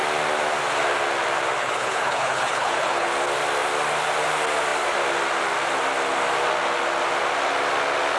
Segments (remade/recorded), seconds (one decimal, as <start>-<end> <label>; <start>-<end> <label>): 0.0-1.6 recorded; 1.6-3.1 remade; 3.1-8.2 recorded